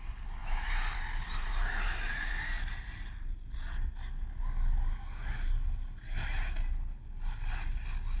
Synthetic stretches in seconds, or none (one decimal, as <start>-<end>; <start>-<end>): 0.4-2.3